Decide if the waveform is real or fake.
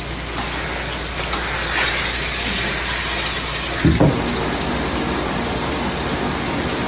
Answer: real